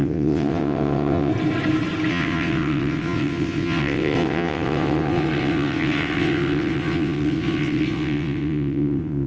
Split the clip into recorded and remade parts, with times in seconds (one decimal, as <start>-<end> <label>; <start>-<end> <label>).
0.0-1.3 remade; 1.3-2.1 recorded; 2.1-9.3 remade